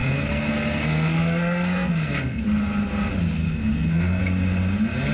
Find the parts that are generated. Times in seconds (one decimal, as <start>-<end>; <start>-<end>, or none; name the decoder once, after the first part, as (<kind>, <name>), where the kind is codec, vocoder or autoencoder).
0.0-2.4 (codec, SNAC); 3.4-4.2